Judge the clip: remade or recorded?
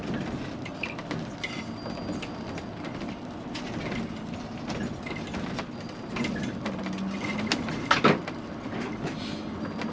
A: recorded